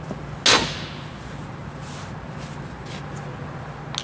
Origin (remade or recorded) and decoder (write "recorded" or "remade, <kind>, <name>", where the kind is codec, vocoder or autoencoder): recorded